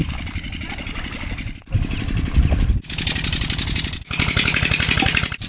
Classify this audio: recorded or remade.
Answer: remade